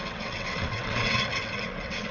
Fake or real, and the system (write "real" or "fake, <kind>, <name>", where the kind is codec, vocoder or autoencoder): fake, vocoder, WaveNeXt